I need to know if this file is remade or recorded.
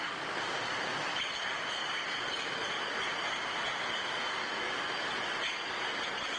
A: recorded